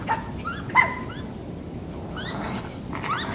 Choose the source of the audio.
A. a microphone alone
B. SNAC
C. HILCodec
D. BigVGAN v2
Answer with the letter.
A